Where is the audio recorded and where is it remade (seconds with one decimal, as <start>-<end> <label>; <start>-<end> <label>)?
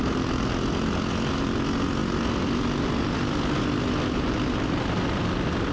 0.0-5.7 recorded